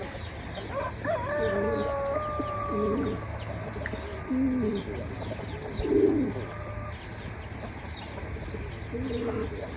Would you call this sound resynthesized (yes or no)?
no